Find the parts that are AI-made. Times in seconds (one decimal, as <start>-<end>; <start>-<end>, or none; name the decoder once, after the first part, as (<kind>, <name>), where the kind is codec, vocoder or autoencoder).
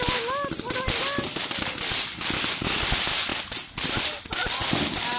none